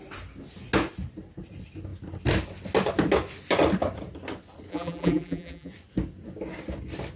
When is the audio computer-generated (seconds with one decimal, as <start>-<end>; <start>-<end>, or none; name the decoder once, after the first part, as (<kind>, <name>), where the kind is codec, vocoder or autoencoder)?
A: 4.7-5.7 (vocoder, BigVGAN v2)